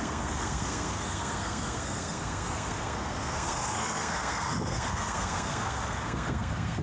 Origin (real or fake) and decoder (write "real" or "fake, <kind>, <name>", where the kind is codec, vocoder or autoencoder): fake, codec, SNAC